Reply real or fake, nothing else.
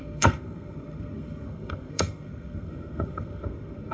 fake